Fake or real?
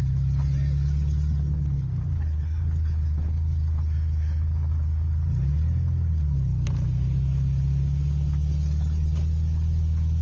real